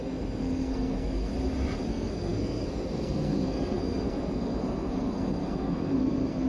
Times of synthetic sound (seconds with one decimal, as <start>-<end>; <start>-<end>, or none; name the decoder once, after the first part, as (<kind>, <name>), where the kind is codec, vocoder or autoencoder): 0.0-1.3 (codec, SNAC); 1.9-6.5